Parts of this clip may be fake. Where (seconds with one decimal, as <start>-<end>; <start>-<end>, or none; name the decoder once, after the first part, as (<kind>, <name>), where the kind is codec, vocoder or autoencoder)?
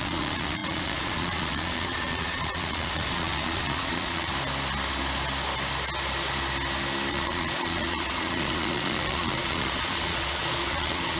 0.0-4.3 (vocoder, Vocos); 7.1-11.2